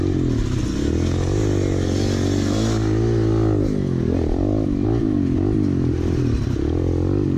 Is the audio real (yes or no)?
yes